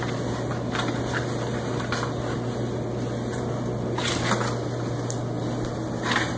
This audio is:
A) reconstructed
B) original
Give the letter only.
B